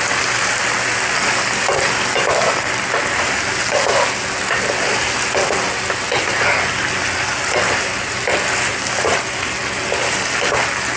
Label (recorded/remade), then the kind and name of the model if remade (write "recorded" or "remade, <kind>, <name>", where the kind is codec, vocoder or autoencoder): recorded